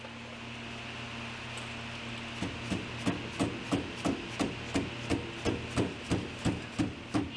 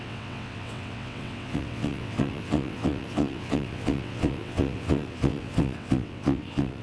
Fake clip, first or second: second